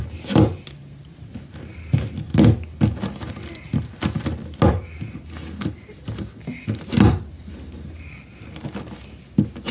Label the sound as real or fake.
real